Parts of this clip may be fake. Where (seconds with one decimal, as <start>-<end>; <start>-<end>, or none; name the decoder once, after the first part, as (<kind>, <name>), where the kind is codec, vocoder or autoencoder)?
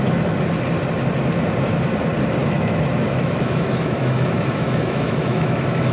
2.4-5.9 (autoencoder, DAC-VAE)